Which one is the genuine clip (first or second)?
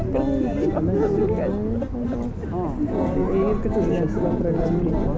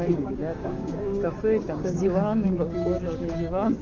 first